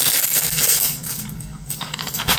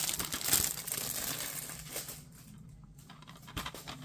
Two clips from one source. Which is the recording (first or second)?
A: second